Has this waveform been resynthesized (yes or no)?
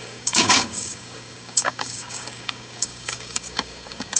yes